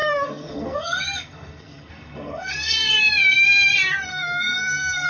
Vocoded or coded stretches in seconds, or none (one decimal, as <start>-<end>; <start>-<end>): 0.0-3.1; 4.1-5.1